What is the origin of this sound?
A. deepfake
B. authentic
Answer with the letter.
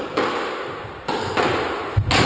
B